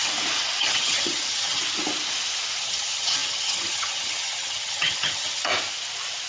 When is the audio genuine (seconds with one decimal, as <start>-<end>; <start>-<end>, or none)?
0.0-0.6; 1.6-2.6; 5.5-6.3